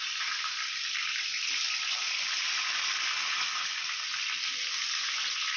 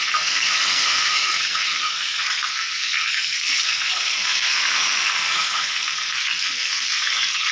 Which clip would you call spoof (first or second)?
second